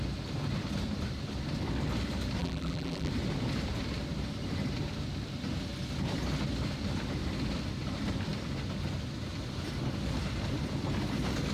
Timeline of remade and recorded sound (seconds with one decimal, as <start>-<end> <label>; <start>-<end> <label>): 0.0-2.4 recorded; 2.4-3.1 remade; 3.1-11.5 recorded